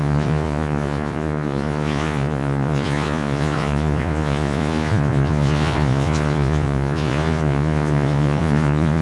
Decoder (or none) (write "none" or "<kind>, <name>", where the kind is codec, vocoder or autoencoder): vocoder, Vocos